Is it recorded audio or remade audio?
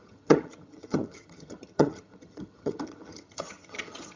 remade